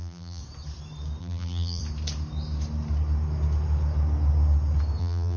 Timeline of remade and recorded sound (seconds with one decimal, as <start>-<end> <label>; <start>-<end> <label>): 0.0-0.4 remade; 0.4-1.2 recorded; 1.2-1.8 remade; 1.8-5.0 recorded; 5.0-5.4 remade